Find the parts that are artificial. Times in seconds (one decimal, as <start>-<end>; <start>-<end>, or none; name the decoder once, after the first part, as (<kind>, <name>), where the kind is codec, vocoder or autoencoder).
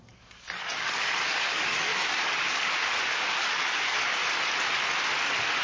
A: 0.0-4.2 (codec, DAC)